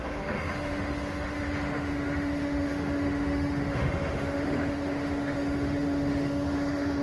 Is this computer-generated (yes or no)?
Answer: yes